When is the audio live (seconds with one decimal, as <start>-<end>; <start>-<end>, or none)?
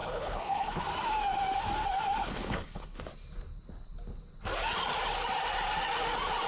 0.8-2.2; 3.0-6.5